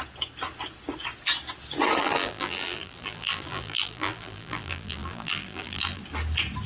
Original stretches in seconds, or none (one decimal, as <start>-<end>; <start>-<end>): 0.0-2.0; 6.0-6.7